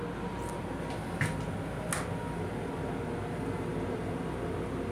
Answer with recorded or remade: recorded